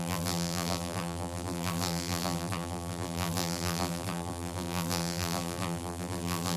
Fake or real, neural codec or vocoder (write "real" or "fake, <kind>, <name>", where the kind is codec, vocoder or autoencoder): fake, vocoder, BigVGAN v2